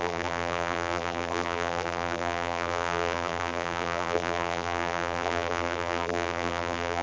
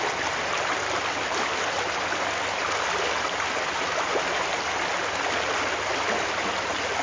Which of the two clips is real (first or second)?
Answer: second